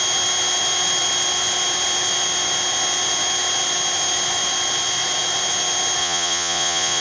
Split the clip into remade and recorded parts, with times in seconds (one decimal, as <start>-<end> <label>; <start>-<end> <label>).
0.0-6.0 recorded; 6.0-7.0 remade